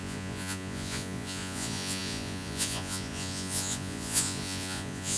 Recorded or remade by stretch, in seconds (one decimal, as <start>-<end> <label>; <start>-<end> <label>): 0.0-5.2 remade